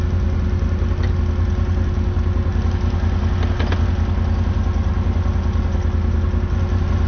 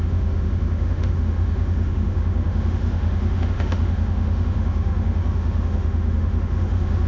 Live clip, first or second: first